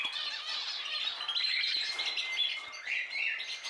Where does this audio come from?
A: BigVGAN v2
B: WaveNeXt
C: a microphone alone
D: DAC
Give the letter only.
C